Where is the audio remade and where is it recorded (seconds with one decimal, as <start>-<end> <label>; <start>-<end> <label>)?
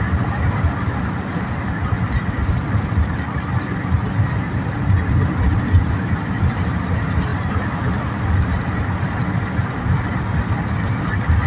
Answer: 0.0-11.5 recorded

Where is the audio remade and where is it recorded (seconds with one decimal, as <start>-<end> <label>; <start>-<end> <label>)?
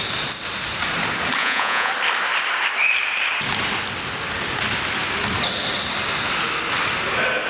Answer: 0.0-1.4 recorded; 1.4-1.9 remade; 1.9-7.5 recorded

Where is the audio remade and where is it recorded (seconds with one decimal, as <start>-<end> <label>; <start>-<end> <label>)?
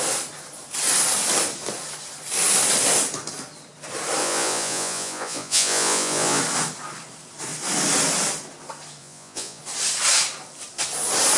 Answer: 0.0-4.2 recorded; 4.2-6.4 remade; 6.4-9.0 recorded; 9.0-9.6 remade; 9.6-11.4 recorded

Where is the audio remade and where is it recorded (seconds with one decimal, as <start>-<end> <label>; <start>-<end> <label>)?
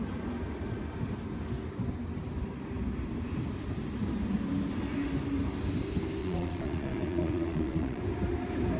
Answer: 0.0-6.2 recorded; 6.2-8.0 remade; 8.0-8.8 recorded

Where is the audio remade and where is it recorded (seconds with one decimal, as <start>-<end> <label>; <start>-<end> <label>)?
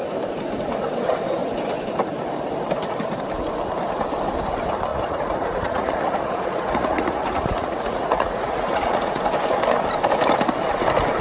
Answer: 0.0-4.9 recorded; 4.9-9.2 remade; 9.2-11.2 recorded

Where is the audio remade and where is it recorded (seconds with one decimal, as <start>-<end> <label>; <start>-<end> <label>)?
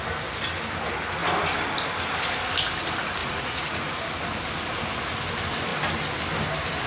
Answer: 0.0-3.2 recorded; 3.2-4.0 remade; 4.0-6.9 recorded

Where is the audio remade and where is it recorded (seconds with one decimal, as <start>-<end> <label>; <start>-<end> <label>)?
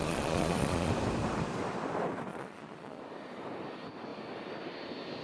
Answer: 0.0-0.9 remade; 0.9-2.3 recorded; 2.3-3.0 remade; 3.0-5.2 recorded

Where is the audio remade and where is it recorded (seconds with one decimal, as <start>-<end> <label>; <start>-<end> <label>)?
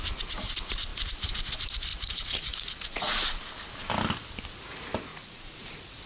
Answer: 0.0-1.9 recorded; 1.9-3.4 remade; 3.4-5.1 recorded; 5.1-6.1 remade